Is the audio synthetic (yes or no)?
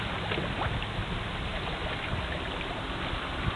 no